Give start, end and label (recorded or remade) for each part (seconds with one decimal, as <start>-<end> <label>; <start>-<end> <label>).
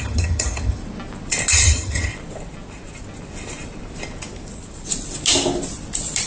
0.0-0.8 remade; 0.8-1.5 recorded; 1.5-2.1 remade; 2.1-6.3 recorded